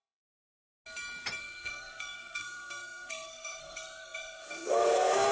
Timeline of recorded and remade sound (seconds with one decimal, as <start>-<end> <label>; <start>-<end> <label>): 0.0-0.6 remade; 0.6-1.4 recorded; 1.4-5.3 remade